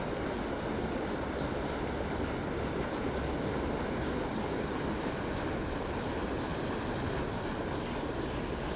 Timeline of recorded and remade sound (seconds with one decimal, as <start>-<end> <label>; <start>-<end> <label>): 0.0-8.8 recorded